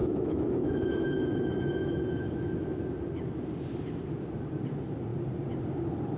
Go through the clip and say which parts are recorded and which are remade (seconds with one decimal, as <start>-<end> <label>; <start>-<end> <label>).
0.0-2.9 remade; 2.9-6.2 recorded